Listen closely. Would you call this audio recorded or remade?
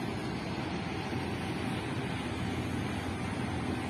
recorded